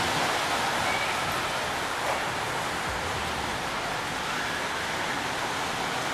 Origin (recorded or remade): recorded